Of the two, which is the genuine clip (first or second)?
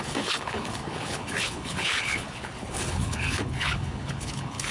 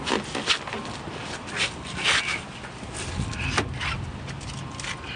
second